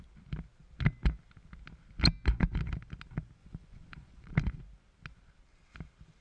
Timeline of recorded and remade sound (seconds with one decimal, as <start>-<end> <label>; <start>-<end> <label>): 0.0-3.4 recorded; 3.4-4.3 remade; 4.3-6.2 recorded